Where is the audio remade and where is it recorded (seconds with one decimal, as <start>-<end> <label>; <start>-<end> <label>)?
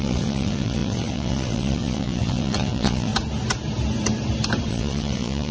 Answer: 0.0-3.1 remade; 3.1-4.7 recorded; 4.7-5.5 remade